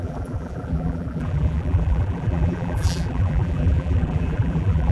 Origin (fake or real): fake